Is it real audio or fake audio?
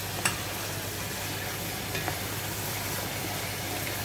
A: real